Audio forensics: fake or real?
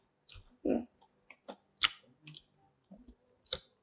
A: real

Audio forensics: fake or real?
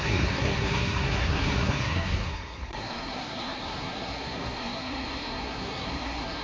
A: fake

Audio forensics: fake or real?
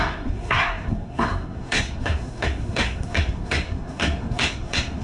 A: fake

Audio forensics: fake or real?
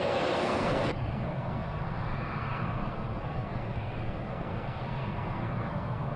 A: fake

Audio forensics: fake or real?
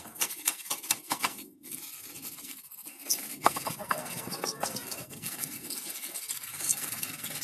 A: fake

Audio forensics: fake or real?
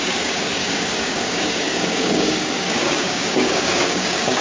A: fake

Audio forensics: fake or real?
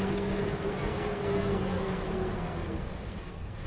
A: fake